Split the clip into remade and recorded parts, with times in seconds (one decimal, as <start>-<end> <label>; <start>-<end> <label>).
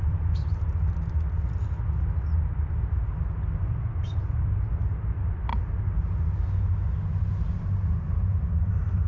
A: 0.0-9.1 recorded